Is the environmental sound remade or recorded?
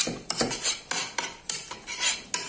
recorded